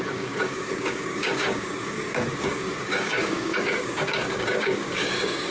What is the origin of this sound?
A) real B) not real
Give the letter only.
B